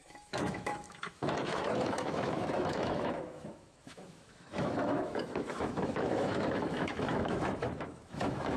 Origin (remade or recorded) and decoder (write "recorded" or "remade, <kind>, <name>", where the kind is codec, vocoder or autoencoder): remade, autoencoder, DAC-VAE